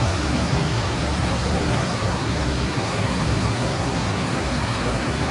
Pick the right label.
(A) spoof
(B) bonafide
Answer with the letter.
A